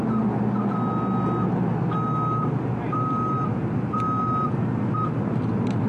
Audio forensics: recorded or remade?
recorded